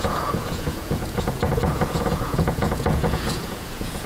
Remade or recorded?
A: remade